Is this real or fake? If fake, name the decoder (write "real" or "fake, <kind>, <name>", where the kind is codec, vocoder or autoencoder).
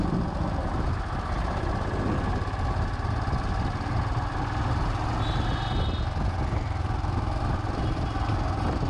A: real